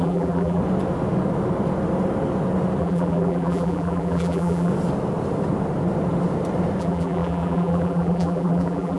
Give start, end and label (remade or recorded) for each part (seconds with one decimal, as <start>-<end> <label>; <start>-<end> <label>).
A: 0.0-0.6 remade; 0.6-2.8 recorded; 2.8-4.7 remade; 4.7-6.8 recorded; 6.8-9.0 remade